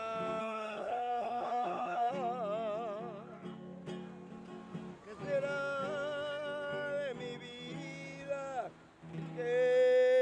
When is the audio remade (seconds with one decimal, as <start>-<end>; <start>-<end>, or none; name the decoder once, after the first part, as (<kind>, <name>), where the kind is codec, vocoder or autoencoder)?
0.4-2.1 (codec, SNAC)